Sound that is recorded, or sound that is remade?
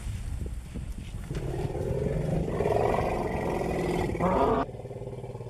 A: recorded